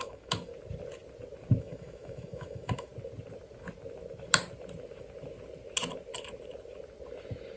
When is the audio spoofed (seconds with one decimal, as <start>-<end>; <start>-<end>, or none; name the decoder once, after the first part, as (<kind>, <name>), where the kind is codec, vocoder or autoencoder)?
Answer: 0.0-0.5 (autoencoder, DAC-VAE); 1.6-2.9